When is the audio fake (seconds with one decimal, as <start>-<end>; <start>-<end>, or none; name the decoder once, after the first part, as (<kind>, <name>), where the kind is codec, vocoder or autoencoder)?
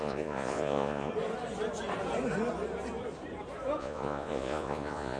0.0-1.1 (vocoder, Vocos); 3.8-5.2